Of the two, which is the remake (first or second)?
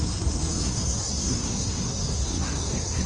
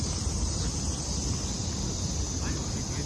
first